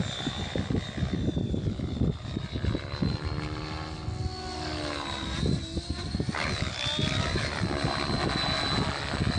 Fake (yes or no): no